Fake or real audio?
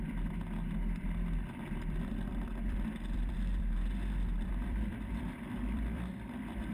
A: fake